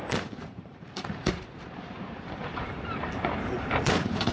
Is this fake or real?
fake